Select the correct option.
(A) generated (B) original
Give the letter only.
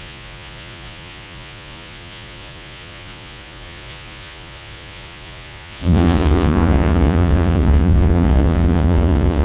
A